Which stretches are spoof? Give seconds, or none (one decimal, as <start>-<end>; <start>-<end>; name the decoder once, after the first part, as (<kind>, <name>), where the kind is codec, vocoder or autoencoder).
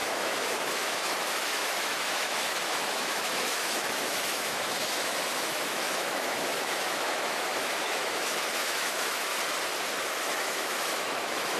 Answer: 0.0-9.3 (autoencoder, DAC-VAE); 10.0-11.6